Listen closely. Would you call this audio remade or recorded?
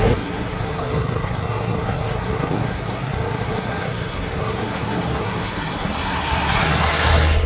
remade